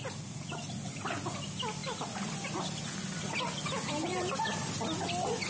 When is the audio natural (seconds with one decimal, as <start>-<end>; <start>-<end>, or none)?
0.0-5.5